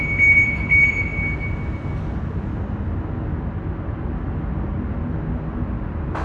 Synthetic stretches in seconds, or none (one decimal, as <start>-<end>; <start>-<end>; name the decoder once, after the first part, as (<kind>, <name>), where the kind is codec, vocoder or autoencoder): none